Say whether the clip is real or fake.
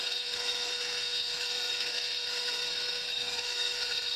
fake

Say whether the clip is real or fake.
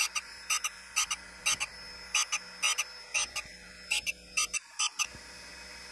real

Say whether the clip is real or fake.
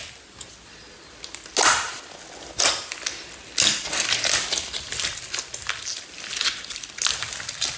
real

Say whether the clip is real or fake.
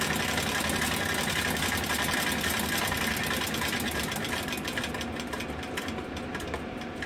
real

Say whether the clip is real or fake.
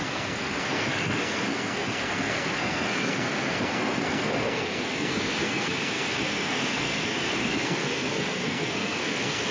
fake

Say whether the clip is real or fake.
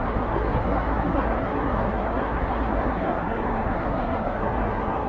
fake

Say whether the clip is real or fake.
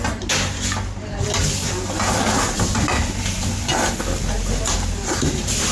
real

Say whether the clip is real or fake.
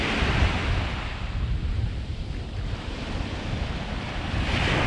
real